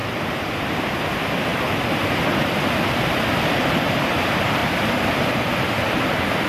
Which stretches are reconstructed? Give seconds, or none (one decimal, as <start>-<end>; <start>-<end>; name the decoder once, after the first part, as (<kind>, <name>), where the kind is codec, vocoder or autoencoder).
0.0-0.9 (vocoder, BigVGAN v2); 1.5-2.1; 4.6-5.5